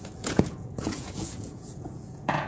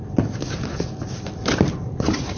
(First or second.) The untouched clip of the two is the second